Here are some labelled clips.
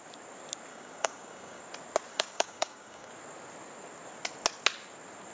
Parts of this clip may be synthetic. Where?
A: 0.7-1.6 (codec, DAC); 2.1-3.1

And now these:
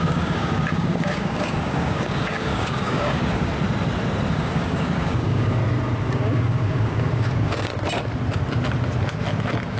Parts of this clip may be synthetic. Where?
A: 0.0-3.5 (codec, DAC); 4.3-5.6; 6.1-7.7